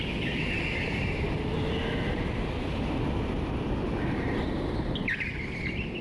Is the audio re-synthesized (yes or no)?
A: no